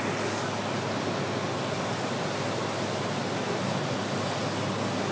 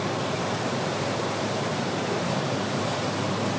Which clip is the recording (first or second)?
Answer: first